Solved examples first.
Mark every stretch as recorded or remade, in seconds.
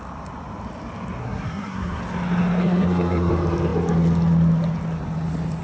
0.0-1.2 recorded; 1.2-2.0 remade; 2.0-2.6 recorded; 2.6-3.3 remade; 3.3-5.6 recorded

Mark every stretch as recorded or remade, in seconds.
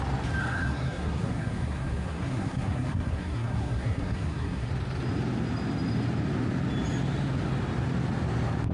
0.0-0.4 recorded; 0.4-4.7 remade; 4.7-8.7 recorded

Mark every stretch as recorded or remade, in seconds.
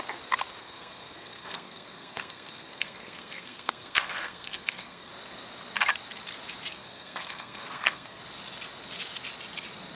0.0-0.6 recorded; 0.6-5.1 remade; 5.1-6.7 recorded; 6.7-8.2 remade; 8.2-9.9 recorded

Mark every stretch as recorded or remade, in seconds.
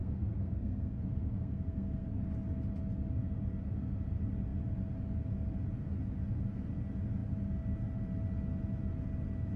0.0-2.2 remade; 2.2-9.6 recorded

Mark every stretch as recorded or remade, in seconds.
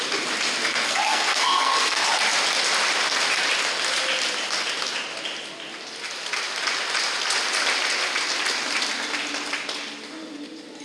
0.0-0.6 recorded; 0.6-2.1 remade; 2.1-10.8 recorded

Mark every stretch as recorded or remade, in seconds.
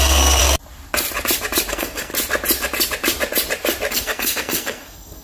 0.0-0.4 remade; 0.4-1.7 recorded; 1.7-2.1 remade; 2.1-3.9 recorded; 3.9-5.2 remade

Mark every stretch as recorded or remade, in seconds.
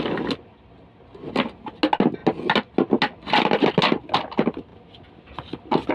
0.0-5.9 recorded